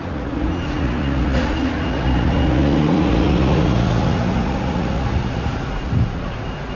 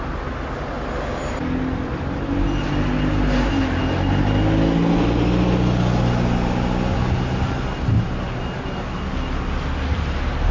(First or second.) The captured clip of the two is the second